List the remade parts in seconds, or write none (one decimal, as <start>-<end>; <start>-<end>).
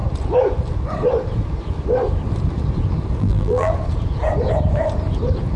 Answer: 3.2-3.7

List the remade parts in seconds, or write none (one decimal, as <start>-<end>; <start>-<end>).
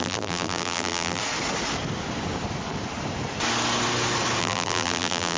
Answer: 0.0-1.2; 4.4-5.4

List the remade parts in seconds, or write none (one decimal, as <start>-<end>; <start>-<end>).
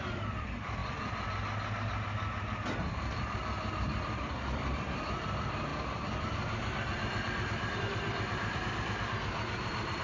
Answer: 0.0-0.8; 4.0-5.7; 7.8-10.0